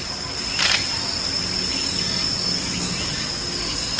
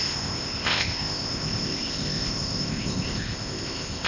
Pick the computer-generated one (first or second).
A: second